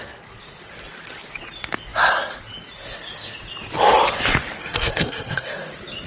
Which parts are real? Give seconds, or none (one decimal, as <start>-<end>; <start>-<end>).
0.0-4.6; 5.5-6.1